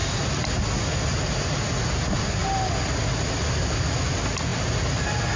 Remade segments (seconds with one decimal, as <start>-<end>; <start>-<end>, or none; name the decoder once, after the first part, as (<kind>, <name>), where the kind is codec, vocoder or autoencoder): none